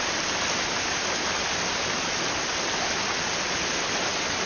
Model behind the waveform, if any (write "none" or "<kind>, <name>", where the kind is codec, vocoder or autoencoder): none